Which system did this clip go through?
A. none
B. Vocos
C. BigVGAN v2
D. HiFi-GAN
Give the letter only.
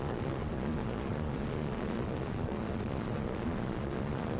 B